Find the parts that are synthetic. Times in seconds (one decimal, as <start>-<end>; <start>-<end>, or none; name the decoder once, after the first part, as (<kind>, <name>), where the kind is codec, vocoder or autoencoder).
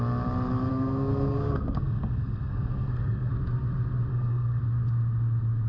0.7-3.3 (codec, SNAC); 4.1-4.6